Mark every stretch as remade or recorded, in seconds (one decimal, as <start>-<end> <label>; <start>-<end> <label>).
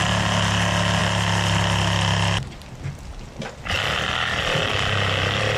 0.0-5.6 recorded